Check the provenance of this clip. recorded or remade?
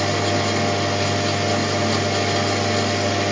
recorded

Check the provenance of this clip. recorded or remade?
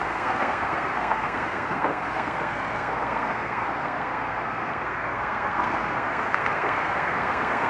remade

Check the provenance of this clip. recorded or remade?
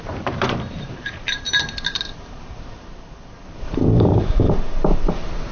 remade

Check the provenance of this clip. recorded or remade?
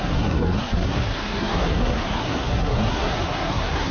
remade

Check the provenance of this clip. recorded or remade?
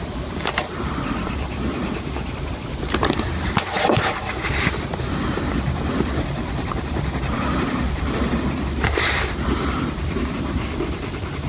remade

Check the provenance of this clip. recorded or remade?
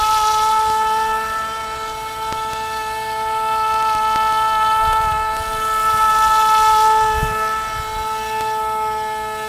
recorded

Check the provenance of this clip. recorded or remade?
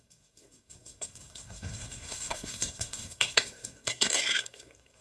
remade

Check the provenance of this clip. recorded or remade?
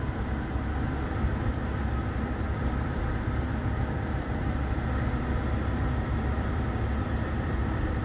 remade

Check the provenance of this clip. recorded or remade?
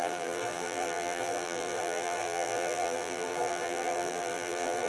remade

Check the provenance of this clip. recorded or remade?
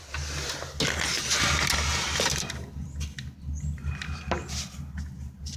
recorded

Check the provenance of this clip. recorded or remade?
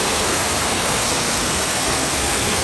remade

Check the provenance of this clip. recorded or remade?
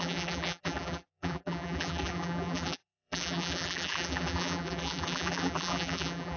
remade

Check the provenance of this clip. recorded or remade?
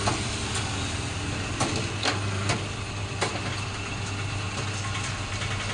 recorded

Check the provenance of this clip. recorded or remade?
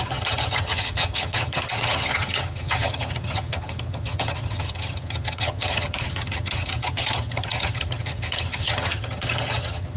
remade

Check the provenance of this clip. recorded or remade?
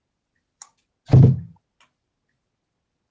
recorded